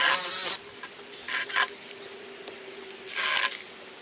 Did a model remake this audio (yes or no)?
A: no